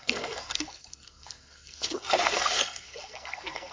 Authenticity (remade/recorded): remade